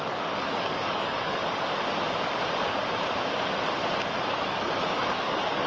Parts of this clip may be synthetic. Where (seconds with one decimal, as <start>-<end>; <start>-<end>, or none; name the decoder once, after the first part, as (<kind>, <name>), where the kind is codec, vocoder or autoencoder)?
0.0-1.4 (codec, DAC); 4.3-5.7